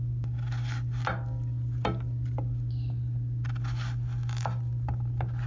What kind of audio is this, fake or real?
real